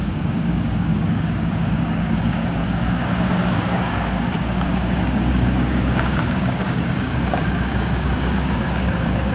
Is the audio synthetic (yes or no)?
yes